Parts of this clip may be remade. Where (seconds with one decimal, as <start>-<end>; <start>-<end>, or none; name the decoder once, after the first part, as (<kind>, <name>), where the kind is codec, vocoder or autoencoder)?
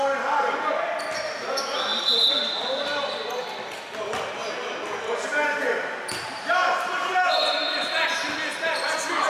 2.9-3.4 (vocoder, BigVGAN v2); 4.4-8.0